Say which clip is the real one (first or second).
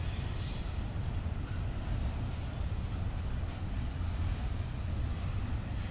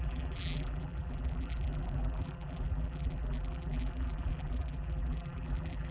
first